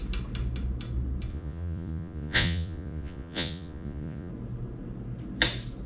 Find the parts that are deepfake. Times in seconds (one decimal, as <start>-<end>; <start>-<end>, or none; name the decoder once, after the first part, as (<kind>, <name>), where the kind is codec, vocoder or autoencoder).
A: 1.3-4.3 (vocoder, Vocos)